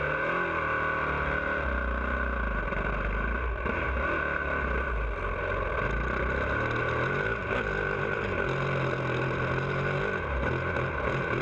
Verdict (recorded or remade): recorded